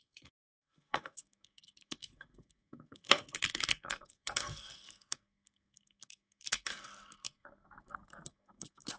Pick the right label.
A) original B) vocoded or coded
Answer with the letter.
B